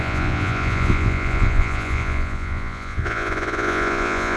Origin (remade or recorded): remade